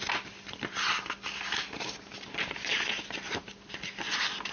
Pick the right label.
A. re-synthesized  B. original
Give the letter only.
A